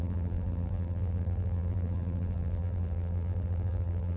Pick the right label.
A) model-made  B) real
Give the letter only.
A